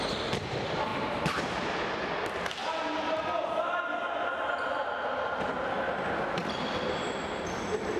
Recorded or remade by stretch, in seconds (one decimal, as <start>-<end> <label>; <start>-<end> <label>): 0.0-8.0 recorded